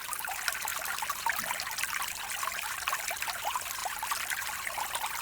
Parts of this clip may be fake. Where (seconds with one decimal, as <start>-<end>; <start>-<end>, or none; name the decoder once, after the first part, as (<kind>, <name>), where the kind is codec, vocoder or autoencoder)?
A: 3.8-4.8 (vocoder, BigVGAN v2)